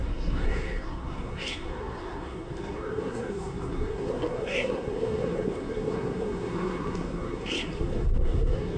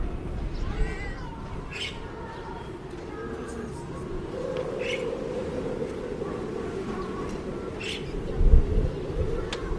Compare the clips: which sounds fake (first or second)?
first